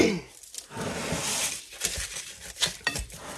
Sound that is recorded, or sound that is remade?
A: recorded